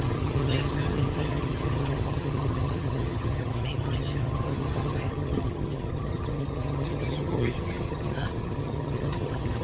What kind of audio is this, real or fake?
fake